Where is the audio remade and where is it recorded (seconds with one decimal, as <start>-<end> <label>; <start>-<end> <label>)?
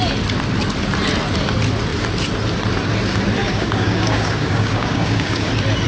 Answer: 0.0-3.4 recorded; 3.4-5.5 remade; 5.5-5.9 recorded